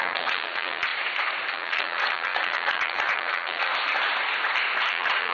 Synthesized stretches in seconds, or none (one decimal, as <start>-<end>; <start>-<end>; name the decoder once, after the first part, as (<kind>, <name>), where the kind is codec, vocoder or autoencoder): 0.0-0.9 (vocoder, Vocos); 1.5-3.7; 4.8-5.3